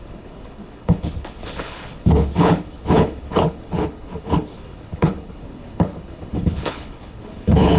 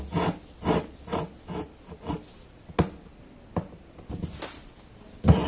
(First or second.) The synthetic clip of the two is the first